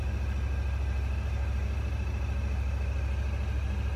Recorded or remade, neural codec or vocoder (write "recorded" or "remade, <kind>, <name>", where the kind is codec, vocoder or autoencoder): recorded